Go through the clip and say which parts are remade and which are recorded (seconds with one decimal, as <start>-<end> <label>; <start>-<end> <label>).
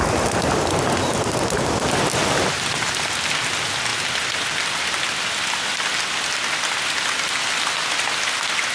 0.0-8.7 recorded